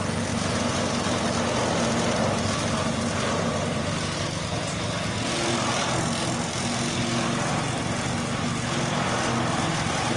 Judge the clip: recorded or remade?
recorded